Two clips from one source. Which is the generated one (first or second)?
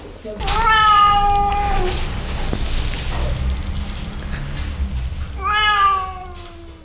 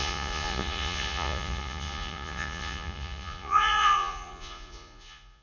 second